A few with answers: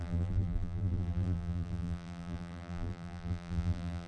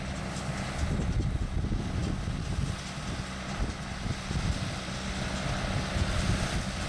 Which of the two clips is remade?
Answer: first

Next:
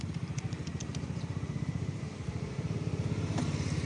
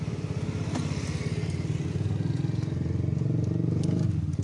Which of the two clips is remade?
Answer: first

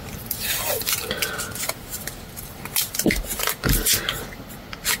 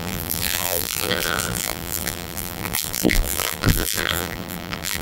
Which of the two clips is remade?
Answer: second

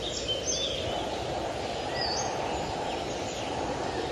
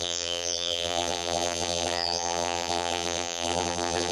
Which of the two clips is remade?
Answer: second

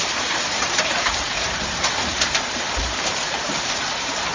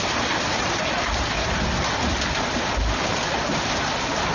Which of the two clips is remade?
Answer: first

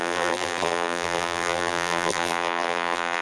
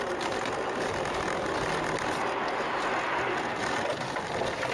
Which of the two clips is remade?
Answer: first